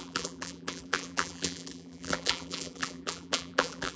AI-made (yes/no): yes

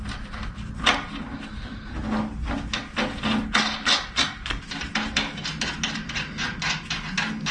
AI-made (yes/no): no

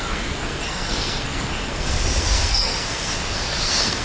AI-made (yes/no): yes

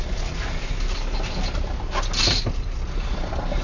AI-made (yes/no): no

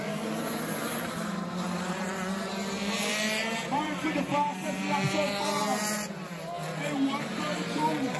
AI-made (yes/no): yes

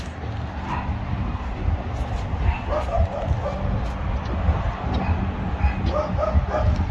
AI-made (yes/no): no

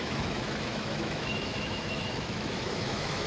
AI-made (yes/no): yes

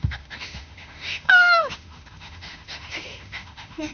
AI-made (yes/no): yes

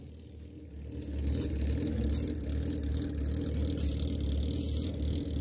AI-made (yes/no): no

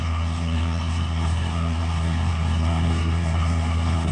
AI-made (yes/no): yes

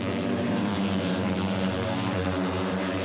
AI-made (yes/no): yes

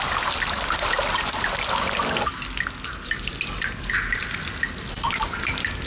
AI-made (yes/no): no